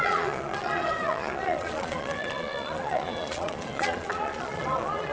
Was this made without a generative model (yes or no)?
no